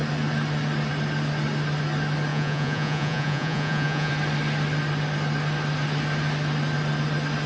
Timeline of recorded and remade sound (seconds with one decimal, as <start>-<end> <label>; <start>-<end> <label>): 0.0-2.3 recorded; 2.3-4.1 remade; 4.1-7.5 recorded